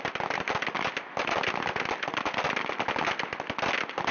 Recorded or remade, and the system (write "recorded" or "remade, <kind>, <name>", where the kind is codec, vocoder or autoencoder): recorded